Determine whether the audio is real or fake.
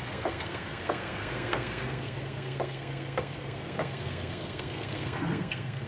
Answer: fake